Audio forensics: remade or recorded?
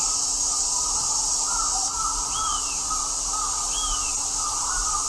recorded